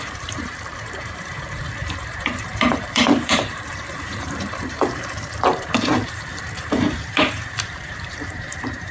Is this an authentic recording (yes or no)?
no